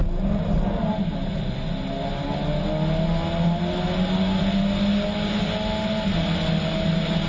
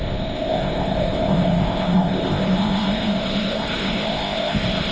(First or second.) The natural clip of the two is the first